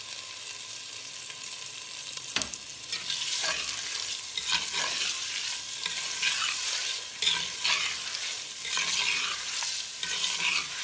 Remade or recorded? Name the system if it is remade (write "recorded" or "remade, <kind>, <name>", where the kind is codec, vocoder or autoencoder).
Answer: recorded